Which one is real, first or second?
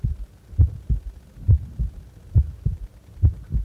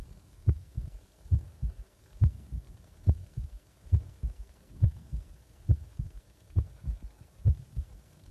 first